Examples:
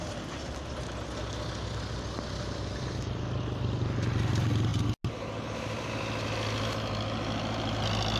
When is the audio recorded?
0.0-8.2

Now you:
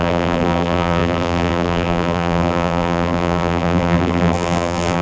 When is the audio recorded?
none

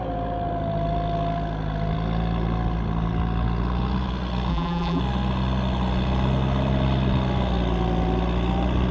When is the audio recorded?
0.0-4.5; 5.0-8.9

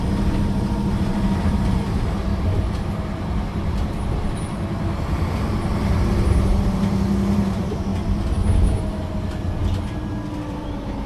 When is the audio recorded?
2.3-5.9; 7.9-10.5

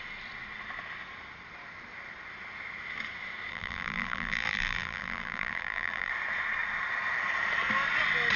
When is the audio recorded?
0.0-3.5; 6.1-8.4